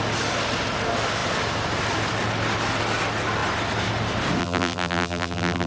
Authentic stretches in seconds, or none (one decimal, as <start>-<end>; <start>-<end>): 0.0-4.4